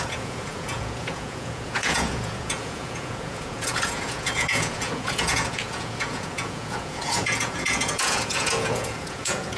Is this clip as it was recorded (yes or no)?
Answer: no